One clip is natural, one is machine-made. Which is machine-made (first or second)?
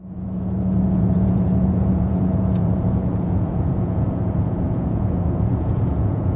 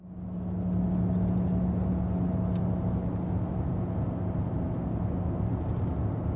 first